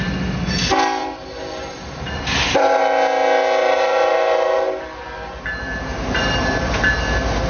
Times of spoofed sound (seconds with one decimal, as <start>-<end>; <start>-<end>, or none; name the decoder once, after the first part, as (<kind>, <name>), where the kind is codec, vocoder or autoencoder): 1.0-2.8 (vocoder, BigVGAN v2); 3.6-5.0

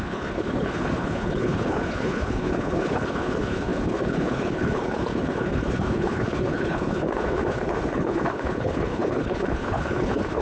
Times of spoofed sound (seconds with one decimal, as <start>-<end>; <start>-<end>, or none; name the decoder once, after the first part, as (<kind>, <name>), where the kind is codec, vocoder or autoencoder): 0.0-10.4 (codec, HILCodec)

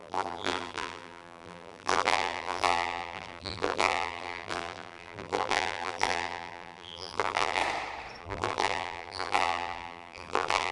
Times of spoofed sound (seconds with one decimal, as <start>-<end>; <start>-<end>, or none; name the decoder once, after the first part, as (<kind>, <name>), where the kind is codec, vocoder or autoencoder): 0.0-7.6 (vocoder, BigVGAN v2); 8.2-10.7

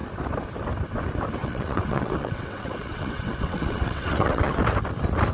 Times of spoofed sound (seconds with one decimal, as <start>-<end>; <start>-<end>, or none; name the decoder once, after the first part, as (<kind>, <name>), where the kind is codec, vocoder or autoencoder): 1.4-4.6 (vocoder, WaveNeXt)

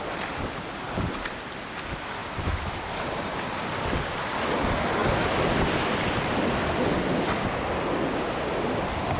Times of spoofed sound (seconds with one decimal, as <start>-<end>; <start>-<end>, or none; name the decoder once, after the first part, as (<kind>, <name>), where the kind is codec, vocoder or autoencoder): 2.2-2.9 (vocoder, BigVGAN v2)

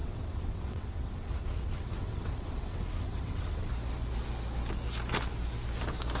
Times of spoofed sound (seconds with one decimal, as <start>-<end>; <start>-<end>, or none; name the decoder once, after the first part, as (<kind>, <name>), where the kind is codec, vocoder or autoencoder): 0.0-3.7 (vocoder, WaveNeXt)

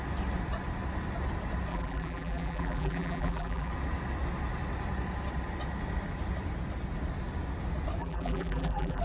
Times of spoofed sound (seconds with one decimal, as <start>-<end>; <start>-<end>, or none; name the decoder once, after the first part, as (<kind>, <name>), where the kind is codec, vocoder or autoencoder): 1.7-3.7 (vocoder, BigVGAN v2); 8.0-9.0